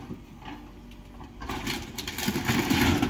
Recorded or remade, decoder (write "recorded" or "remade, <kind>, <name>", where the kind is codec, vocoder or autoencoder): recorded